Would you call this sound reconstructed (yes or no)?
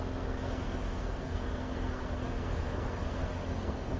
yes